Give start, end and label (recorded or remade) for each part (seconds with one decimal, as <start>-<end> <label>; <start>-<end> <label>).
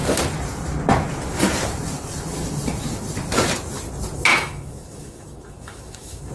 0.0-4.3 recorded; 4.3-6.3 remade